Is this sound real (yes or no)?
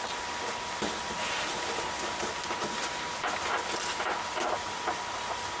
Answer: yes